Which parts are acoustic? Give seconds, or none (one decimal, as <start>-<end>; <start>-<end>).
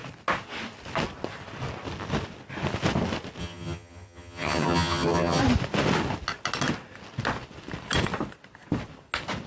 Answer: 0.0-3.4; 5.4-9.5